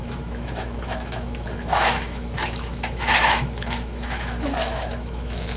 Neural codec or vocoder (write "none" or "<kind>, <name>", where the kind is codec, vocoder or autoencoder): autoencoder, DAC-VAE